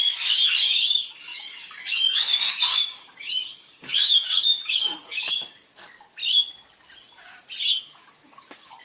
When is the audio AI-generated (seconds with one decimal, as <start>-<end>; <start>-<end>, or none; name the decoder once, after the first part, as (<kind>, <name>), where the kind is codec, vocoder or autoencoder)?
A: 0.0-6.2 (codec, DAC); 7.8-8.8